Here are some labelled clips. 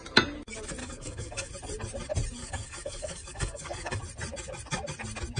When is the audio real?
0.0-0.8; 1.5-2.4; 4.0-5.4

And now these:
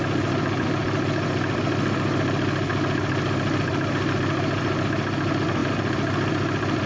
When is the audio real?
0.0-6.9

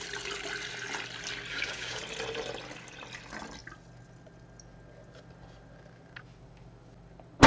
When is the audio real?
0.0-1.5; 2.0-7.5

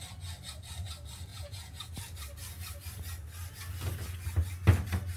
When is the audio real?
0.0-1.3; 1.9-5.2

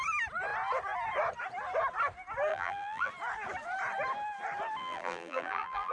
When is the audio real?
0.0-2.5; 3.1-4.8

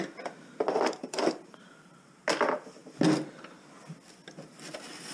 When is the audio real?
0.0-1.0; 2.1-5.1

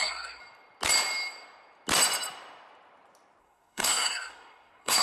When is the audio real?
0.4-3.4